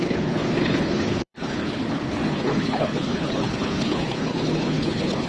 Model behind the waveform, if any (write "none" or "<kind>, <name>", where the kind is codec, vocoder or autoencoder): codec, HILCodec